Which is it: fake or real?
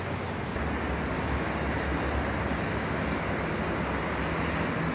real